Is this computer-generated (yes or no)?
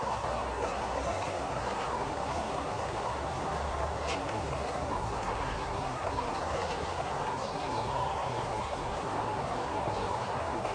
yes